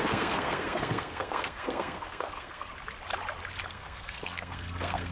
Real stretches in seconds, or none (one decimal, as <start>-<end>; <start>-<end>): 2.7-3.7